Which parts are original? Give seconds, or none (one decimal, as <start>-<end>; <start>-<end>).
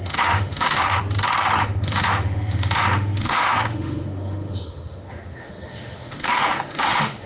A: 1.0-1.6